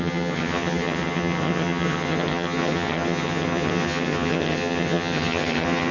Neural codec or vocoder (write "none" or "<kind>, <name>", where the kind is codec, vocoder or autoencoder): vocoder, HiFi-GAN